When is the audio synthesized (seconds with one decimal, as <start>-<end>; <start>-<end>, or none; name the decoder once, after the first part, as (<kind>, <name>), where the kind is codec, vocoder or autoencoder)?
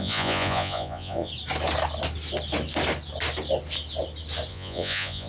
0.0-1.3 (vocoder, Vocos); 4.5-5.3